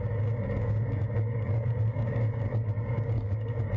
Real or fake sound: fake